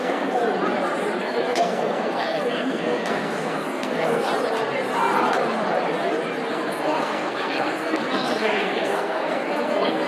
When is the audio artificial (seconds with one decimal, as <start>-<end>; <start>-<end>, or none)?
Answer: 0.0-0.4; 1.2-4.3; 6.5-10.1